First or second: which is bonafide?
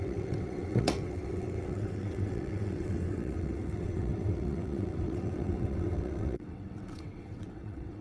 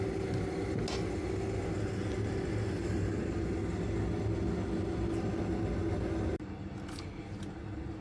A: second